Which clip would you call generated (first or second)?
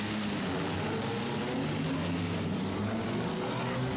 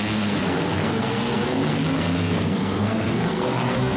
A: second